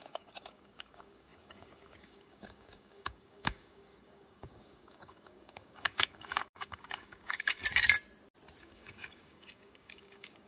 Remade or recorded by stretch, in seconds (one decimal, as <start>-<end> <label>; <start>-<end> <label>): 0.0-7.6 remade; 7.6-8.6 recorded; 8.6-10.5 remade